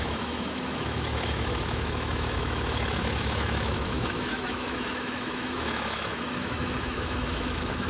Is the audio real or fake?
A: fake